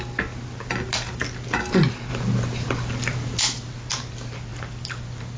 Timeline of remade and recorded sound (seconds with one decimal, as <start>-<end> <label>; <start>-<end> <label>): 0.0-5.4 recorded

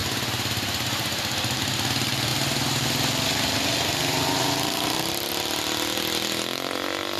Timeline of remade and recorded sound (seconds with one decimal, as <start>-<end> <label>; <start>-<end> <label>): 0.0-1.6 remade; 1.6-7.2 recorded

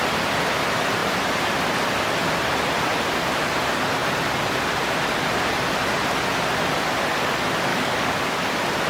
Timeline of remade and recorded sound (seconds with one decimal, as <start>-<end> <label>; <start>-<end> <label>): 0.0-7.7 recorded; 7.7-8.5 remade; 8.5-8.9 recorded

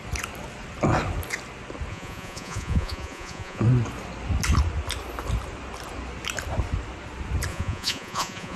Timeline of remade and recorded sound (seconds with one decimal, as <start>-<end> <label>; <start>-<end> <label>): 0.0-1.9 recorded; 1.9-3.6 remade; 3.6-7.5 recorded; 7.5-8.6 remade

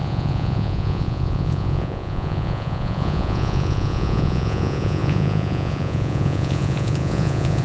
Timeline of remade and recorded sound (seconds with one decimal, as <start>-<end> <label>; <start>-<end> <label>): 0.0-7.6 remade

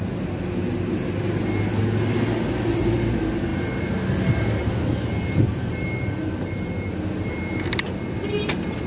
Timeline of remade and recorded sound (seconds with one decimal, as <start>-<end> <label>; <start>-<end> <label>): 0.0-8.9 recorded